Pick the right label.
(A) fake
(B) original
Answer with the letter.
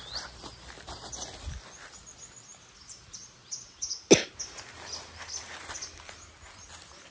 B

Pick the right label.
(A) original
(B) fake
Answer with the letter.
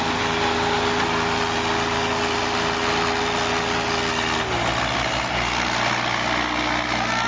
A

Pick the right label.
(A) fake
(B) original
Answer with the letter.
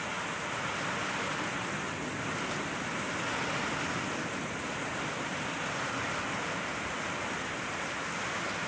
B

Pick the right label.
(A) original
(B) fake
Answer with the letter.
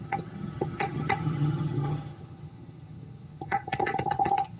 B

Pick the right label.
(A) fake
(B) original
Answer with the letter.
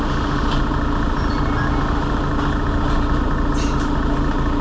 B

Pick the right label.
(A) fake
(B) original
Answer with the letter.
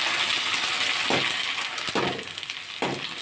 B